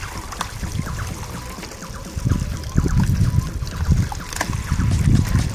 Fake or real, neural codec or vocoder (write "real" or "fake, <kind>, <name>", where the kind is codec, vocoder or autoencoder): real